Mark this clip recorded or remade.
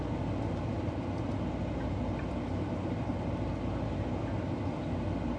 recorded